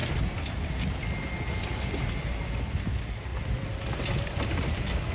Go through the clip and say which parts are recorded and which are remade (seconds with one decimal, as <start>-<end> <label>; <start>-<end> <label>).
0.0-5.1 recorded